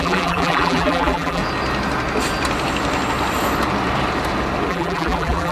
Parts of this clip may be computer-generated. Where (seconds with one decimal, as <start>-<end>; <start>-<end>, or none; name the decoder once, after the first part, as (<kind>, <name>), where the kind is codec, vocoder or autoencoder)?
0.0-1.4 (vocoder, BigVGAN v2); 4.7-5.5

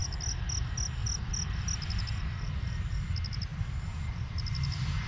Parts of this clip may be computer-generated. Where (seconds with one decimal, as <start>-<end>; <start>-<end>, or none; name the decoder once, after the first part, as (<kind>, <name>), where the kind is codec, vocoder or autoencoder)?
1.0-3.0 (vocoder, BigVGAN v2); 3.5-4.3

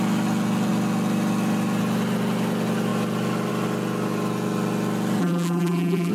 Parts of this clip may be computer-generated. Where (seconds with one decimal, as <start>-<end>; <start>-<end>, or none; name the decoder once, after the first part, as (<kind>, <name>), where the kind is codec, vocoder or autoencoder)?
5.2-6.1 (vocoder, BigVGAN v2)

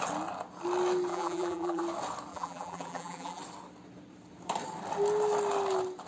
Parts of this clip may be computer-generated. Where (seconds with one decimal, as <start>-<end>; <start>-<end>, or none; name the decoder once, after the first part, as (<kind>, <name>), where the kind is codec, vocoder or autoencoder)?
1.1-1.8 (vocoder, BigVGAN v2); 2.3-3.4

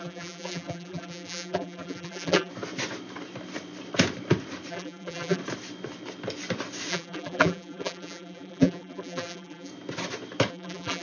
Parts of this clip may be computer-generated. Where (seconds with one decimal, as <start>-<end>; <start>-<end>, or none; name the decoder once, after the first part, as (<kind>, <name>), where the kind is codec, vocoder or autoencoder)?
0.0-2.5 (vocoder, BigVGAN v2); 4.7-5.4; 6.9-9.7; 10.5-11.0